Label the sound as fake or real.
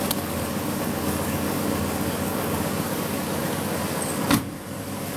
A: fake